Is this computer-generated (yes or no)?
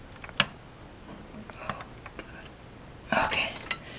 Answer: no